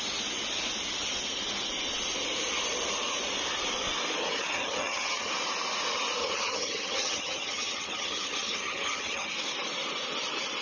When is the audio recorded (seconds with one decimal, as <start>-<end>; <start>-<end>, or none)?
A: 0.0-4.2; 5.3-6.2; 9.3-10.6